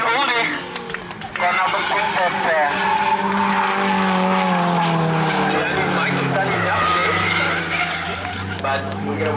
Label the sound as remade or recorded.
recorded